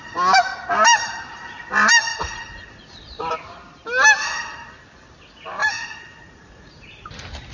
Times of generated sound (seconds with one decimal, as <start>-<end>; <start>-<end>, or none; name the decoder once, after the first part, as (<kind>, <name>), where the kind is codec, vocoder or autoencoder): 2.1-2.7 (vocoder, Vocos); 5.6-6.9